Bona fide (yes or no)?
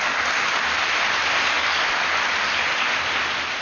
yes